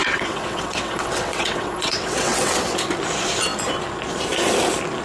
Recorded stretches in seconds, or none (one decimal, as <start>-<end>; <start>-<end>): 2.5-5.0